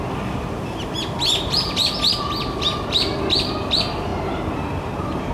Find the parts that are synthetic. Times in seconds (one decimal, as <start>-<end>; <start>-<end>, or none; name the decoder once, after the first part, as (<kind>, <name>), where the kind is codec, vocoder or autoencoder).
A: none